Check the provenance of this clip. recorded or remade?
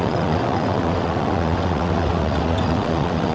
remade